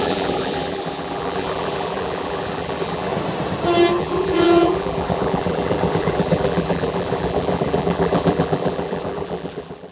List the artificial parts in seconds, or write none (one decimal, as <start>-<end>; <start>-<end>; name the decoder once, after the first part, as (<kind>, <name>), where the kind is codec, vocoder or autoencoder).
0.0-3.1 (vocoder, BigVGAN v2); 4.0-9.9